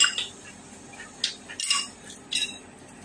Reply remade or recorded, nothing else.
recorded